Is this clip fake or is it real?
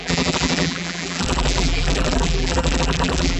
fake